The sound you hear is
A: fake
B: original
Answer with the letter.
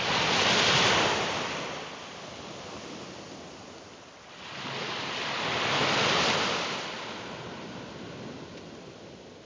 B